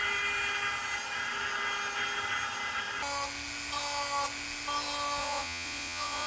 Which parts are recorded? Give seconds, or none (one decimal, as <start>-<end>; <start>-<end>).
0.0-5.2